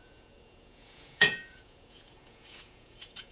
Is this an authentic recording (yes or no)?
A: no